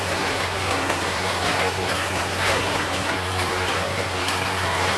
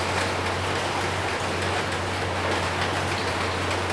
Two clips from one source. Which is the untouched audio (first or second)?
second